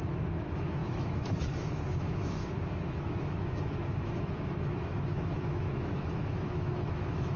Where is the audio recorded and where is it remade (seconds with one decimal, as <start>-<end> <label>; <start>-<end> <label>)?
0.0-7.4 remade